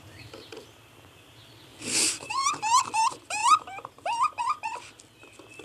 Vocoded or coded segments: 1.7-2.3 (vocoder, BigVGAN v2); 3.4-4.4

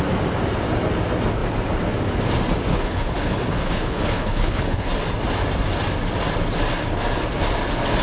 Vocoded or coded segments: 2.7-4.9 (codec, HILCodec)

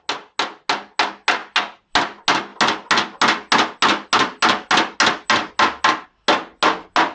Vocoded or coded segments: none

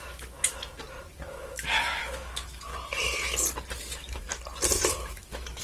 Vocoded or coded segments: 0.0-0.7 (autoencoder, DAC-VAE); 1.3-2.7; 3.9-4.3; 4.9-5.6